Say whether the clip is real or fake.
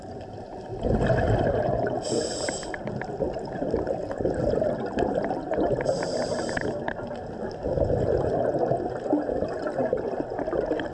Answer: real